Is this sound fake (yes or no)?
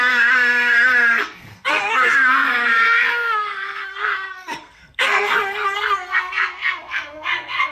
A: yes